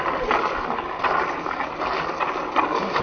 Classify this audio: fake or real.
real